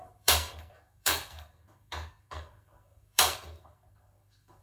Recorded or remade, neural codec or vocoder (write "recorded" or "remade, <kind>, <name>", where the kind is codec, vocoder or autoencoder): remade, codec, SNAC